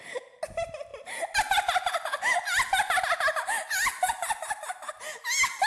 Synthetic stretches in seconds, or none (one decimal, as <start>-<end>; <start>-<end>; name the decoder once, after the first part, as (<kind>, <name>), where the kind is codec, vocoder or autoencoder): none